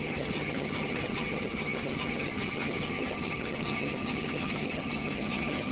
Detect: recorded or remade remade